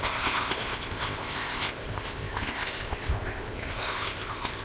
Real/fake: fake